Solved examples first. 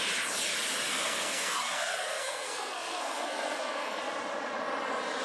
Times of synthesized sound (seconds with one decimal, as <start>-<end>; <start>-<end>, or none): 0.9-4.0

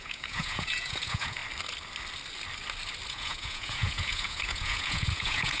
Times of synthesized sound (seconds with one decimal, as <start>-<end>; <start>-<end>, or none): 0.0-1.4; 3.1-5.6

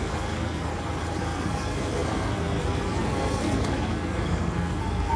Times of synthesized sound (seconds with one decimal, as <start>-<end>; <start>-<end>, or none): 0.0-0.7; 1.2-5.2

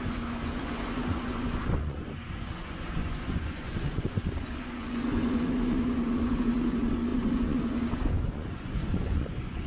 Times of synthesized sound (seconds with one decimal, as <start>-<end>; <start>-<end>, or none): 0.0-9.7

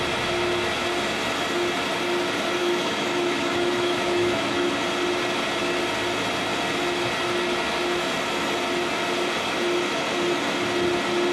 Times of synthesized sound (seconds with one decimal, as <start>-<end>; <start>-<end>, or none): 2.6-4.7